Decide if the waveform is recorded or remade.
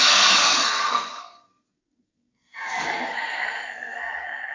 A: remade